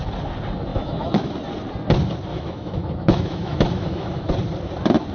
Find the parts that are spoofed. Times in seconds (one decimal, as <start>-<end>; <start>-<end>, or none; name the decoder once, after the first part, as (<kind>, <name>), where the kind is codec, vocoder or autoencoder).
0.7-1.3 (autoencoder, DAC-VAE); 2.3-4.3